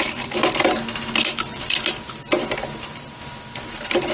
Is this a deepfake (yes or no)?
no